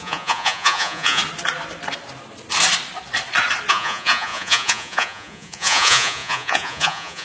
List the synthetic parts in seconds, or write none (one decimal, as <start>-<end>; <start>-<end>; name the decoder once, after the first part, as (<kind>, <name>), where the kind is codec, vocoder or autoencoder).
0.0-1.2 (vocoder, Vocos); 3.7-7.2